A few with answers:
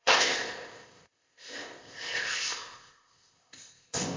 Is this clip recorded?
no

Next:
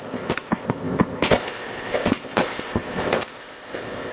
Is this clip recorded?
no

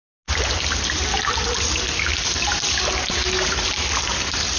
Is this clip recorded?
yes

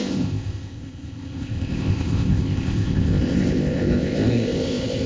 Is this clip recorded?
no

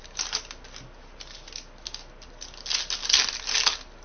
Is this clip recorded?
yes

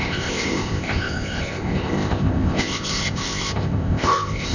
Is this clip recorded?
no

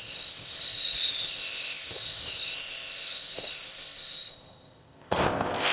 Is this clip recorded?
no